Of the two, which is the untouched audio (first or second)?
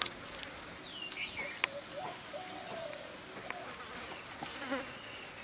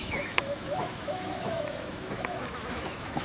first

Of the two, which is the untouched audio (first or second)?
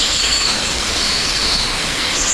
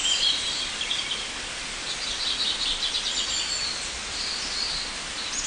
second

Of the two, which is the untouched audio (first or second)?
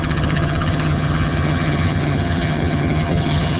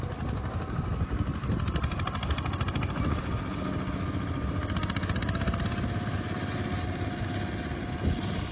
second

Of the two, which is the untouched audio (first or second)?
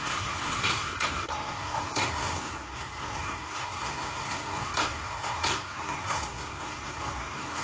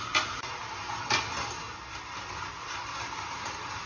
second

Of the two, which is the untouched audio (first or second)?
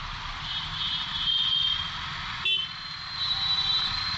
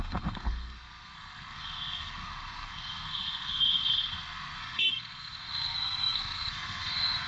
first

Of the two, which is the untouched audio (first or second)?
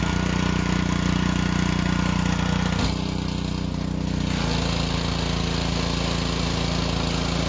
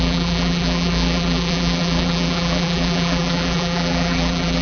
first